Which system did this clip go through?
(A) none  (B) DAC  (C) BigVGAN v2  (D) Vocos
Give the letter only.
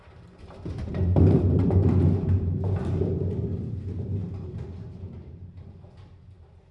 C